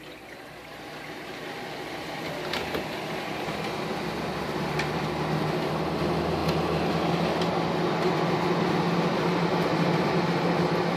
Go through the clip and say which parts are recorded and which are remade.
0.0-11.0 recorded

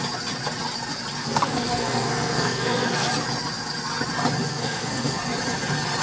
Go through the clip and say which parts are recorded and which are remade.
0.0-1.2 recorded; 1.2-3.1 remade; 3.1-4.5 recorded; 4.5-5.2 remade; 5.2-6.0 recorded

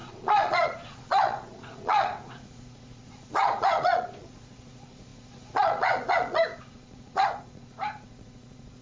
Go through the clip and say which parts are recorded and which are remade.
0.0-8.8 remade

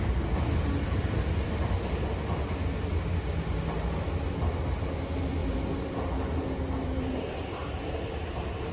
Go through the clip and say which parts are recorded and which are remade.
0.0-8.7 recorded

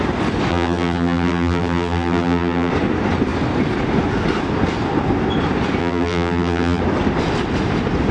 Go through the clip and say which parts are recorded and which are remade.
0.0-0.5 recorded; 0.5-2.7 remade; 2.7-5.8 recorded; 5.8-6.8 remade; 6.8-8.1 recorded

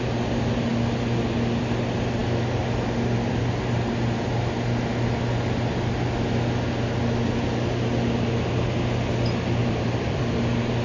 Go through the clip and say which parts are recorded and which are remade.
0.0-9.6 recorded; 9.6-10.2 remade; 10.2-10.8 recorded